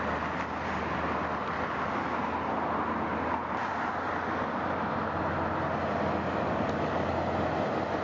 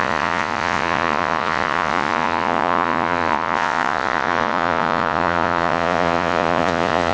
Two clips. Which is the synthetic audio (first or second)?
second